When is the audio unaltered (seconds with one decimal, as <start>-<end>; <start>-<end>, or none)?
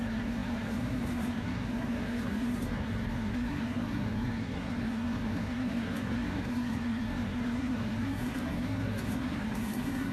none